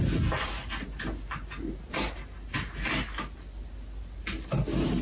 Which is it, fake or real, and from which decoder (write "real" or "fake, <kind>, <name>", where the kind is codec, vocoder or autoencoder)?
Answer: real